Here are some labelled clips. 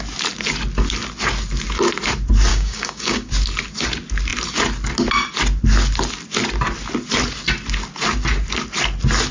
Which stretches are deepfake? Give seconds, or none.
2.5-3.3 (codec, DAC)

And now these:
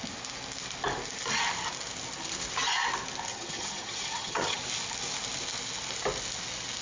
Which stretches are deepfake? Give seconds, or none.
3.3-4.6 (vocoder, HiFi-GAN)

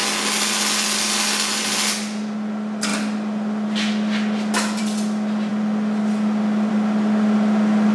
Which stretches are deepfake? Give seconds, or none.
none

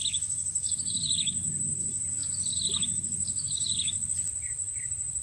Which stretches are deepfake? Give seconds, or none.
0.0-5.2 (vocoder, BigVGAN v2)

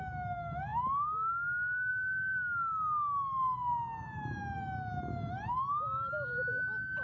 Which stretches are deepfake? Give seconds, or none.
none

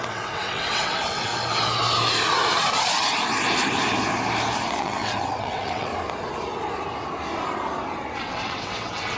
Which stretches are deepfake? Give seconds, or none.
0.0-1.3 (vocoder, WaveNeXt); 4.8-5.9; 8.2-9.2